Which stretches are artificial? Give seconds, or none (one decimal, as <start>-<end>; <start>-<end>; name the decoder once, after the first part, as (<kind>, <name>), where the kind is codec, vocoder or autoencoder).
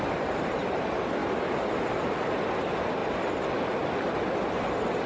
none